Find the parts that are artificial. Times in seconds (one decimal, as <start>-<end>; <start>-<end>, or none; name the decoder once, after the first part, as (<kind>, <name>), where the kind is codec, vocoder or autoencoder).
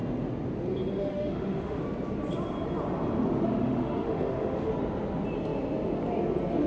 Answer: 1.1-1.8 (autoencoder, DAC-VAE); 3.6-4.7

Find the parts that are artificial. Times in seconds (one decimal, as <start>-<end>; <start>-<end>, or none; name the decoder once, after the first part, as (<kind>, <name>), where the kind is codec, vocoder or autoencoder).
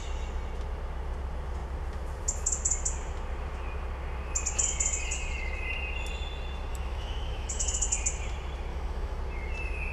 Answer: 6.7-7.7 (autoencoder, DAC-VAE); 8.7-9.2